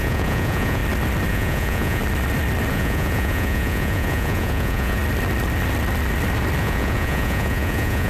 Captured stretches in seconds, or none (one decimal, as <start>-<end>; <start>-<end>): 0.8-1.3; 2.0-2.7; 5.0-6.6